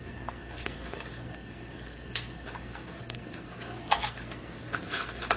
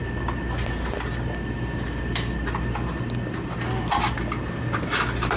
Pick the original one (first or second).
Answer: second